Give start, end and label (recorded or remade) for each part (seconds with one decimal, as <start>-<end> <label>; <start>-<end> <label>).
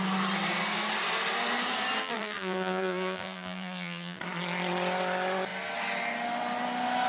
0.0-2.0 recorded; 2.0-4.2 remade; 4.2-7.1 recorded